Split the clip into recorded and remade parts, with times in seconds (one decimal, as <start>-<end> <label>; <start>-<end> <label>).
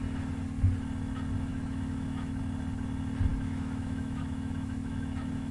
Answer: 0.0-1.5 recorded; 1.5-2.4 remade; 2.4-3.3 recorded; 3.3-5.5 remade